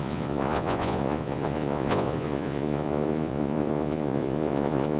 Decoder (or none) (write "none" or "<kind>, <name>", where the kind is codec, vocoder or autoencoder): vocoder, Vocos